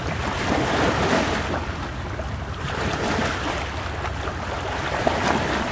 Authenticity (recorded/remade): remade